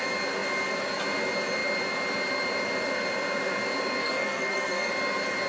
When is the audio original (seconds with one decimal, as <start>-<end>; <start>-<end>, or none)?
0.0-4.0; 4.9-5.5